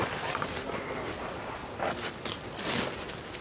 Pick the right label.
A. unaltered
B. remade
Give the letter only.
A